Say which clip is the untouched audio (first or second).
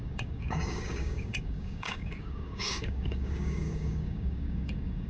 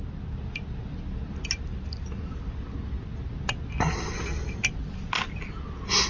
second